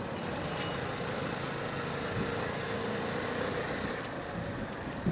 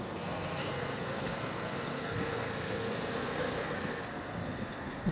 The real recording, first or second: first